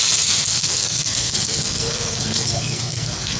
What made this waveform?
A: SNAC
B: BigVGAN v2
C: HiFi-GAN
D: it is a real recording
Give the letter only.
A